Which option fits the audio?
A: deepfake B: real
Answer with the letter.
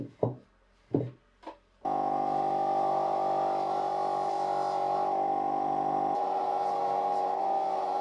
B